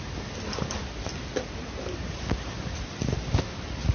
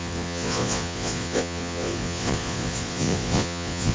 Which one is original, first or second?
first